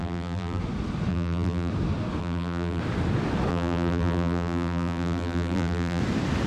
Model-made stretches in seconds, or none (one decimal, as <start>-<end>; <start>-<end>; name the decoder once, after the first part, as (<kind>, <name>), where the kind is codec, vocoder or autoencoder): 0.0-0.6 (vocoder, BigVGAN v2); 1.1-1.7; 2.2-2.8; 3.5-6.0